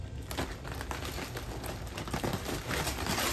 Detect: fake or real real